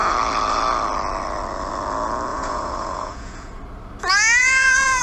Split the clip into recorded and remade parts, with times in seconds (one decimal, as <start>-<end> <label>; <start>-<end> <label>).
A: 0.0-2.3 recorded; 2.3-3.6 remade; 3.6-4.4 recorded; 4.4-5.0 remade